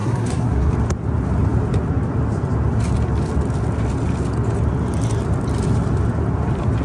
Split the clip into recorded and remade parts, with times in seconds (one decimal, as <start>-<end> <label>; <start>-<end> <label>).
0.0-0.7 remade; 0.7-6.8 recorded